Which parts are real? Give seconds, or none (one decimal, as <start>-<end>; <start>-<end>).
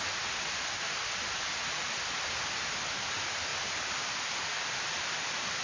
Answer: 0.0-5.6